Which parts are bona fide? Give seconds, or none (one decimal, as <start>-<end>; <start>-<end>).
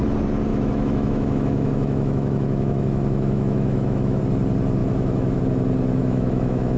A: 0.0-0.5; 4.2-4.8; 5.4-6.0